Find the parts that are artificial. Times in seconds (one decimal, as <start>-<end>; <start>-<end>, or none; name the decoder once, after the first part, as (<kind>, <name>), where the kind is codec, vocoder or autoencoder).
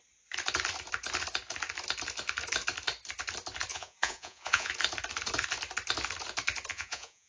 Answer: 3.7-4.7 (vocoder, Vocos); 6.7-7.3